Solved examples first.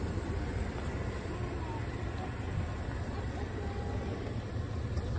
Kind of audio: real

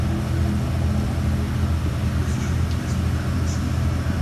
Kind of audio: real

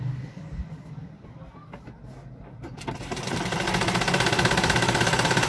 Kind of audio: real